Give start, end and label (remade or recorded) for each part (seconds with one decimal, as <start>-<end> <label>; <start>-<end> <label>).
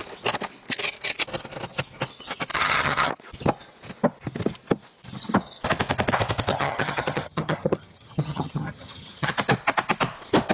0.0-2.5 recorded; 2.5-3.1 remade; 3.1-6.5 recorded; 6.5-9.3 remade; 9.3-10.5 recorded